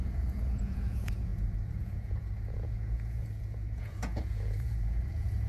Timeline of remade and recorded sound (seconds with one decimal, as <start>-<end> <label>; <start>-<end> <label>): 0.0-5.5 remade